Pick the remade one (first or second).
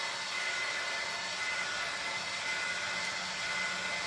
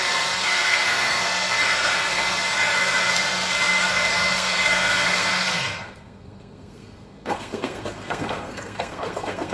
second